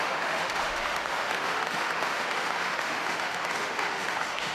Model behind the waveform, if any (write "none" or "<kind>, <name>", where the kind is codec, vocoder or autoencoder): autoencoder, DAC-VAE